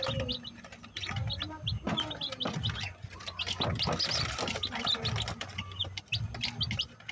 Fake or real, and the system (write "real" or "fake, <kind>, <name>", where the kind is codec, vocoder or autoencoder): real